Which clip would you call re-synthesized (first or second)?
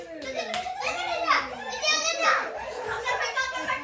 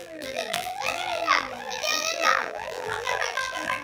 second